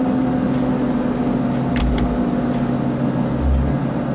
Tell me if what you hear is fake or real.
real